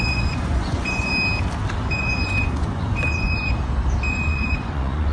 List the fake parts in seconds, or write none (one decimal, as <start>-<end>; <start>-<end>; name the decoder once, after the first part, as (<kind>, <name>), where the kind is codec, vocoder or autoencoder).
0.0-1.1 (vocoder, Vocos); 1.9-3.5; 4.1-5.1